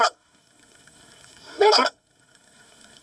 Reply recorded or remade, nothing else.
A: remade